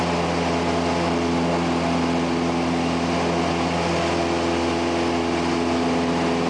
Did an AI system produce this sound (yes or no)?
no